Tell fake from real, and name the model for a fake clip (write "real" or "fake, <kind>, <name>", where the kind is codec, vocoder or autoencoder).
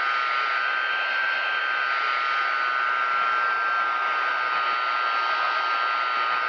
real